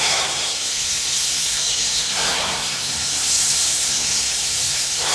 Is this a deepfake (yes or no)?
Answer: yes